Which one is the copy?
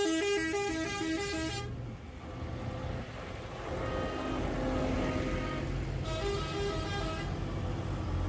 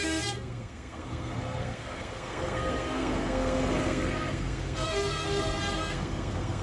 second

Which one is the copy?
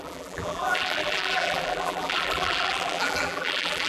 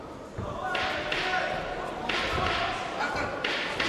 first